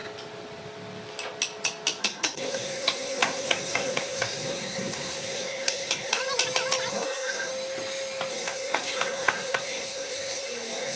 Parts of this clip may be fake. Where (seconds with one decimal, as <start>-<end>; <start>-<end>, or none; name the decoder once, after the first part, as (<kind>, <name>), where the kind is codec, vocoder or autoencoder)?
2.0-6.2 (codec, SNAC); 6.9-7.5; 8.3-11.0